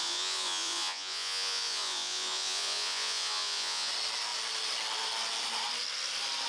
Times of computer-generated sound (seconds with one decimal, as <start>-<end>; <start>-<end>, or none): 0.0-3.9